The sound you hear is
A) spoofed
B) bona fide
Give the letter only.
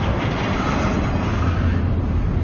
B